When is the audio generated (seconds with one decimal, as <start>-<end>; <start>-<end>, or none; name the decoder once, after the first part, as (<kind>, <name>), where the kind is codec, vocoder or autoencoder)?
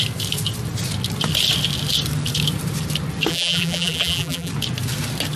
3.3-4.5 (vocoder, BigVGAN v2)